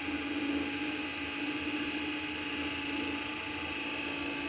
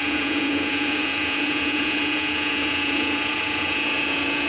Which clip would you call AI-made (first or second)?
second